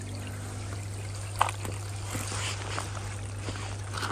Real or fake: real